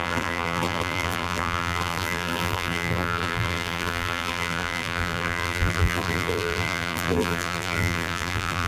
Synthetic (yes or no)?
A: yes